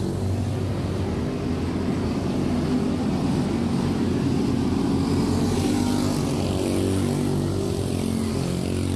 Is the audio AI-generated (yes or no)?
no